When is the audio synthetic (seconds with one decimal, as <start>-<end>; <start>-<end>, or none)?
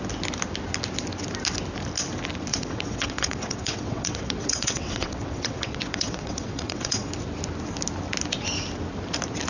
2.5-7.1